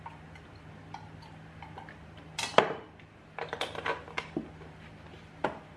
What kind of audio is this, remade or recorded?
remade